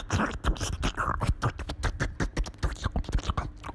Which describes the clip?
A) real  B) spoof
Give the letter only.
A